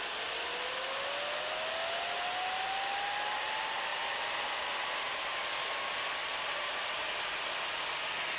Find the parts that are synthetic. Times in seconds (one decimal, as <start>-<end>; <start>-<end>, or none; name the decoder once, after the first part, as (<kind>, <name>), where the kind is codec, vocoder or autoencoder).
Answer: none